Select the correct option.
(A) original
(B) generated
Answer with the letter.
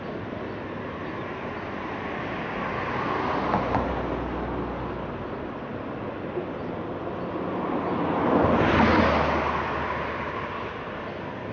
A